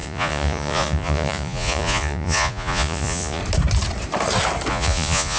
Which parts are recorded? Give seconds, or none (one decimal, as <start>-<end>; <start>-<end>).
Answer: 3.4-4.7